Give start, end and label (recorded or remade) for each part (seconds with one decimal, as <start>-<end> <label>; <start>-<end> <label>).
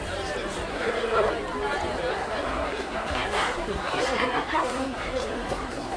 0.0-0.7 recorded; 0.7-1.3 remade; 1.3-2.1 recorded; 2.1-6.0 remade